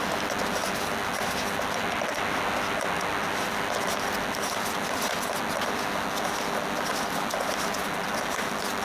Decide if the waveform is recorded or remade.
recorded